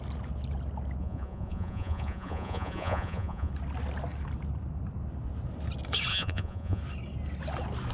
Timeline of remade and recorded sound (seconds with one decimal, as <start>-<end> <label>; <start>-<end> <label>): 0.0-1.0 recorded; 1.0-3.5 remade; 3.5-6.1 recorded; 6.1-6.8 remade; 6.8-7.9 recorded